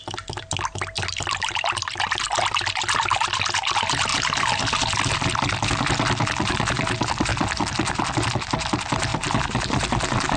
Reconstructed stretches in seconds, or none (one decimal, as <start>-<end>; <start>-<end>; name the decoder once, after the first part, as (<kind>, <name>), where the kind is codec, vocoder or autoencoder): 4.1-5.0 (vocoder, BigVGAN v2); 7.3-8.1; 9.1-9.6